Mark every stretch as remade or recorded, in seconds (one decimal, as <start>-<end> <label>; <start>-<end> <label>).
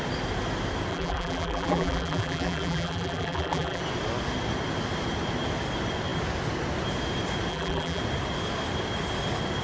0.0-0.9 recorded; 0.9-3.8 remade; 3.8-7.5 recorded; 7.5-8.0 remade; 8.0-9.6 recorded